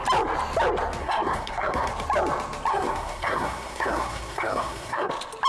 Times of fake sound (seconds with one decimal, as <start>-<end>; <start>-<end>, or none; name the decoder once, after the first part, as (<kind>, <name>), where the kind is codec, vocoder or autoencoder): 1.0-1.9 (codec, SNAC); 2.7-5.1